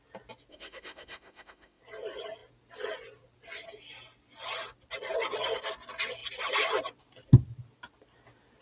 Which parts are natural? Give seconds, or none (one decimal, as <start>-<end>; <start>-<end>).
0.0-0.5; 1.8-8.6